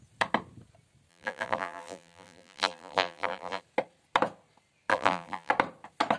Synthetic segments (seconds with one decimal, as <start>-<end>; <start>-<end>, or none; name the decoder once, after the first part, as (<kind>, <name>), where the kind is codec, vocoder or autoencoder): 1.1-3.6 (vocoder, BigVGAN v2); 4.9-5.5